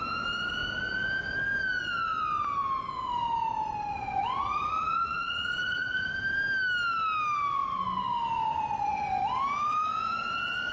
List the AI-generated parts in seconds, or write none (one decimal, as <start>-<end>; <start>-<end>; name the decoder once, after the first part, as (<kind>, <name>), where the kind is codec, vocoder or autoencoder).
3.9-6.1 (vocoder, Vocos)